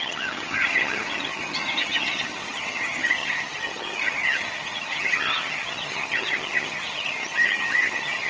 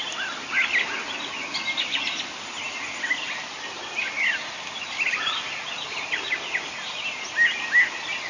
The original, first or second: second